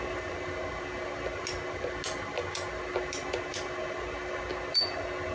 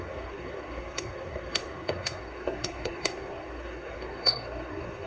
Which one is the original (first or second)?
first